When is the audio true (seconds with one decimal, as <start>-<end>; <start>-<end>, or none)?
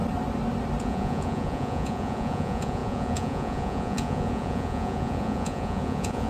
0.0-0.8